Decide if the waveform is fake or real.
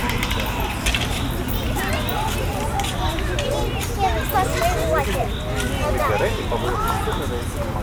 real